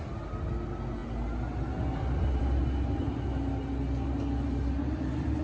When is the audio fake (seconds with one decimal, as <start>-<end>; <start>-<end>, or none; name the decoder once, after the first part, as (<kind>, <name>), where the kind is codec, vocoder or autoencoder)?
none